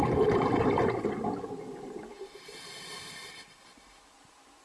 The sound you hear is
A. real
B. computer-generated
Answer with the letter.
A